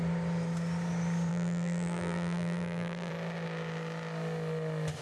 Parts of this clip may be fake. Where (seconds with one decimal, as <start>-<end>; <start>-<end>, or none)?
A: 1.3-3.1